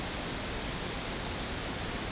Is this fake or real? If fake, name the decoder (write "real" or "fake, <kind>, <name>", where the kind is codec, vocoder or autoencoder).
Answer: real